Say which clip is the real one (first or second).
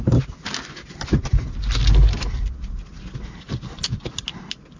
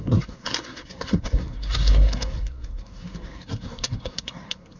first